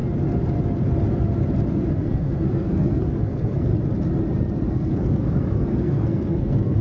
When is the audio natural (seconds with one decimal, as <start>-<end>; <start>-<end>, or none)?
0.0-1.7; 3.7-4.7